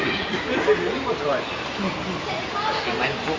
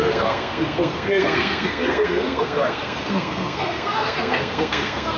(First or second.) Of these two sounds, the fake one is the second